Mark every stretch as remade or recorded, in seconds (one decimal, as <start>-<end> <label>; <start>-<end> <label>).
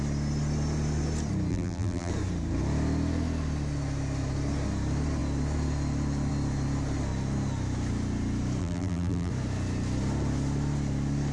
0.0-1.5 recorded; 1.5-2.1 remade; 2.1-8.6 recorded; 8.6-9.3 remade; 9.3-11.3 recorded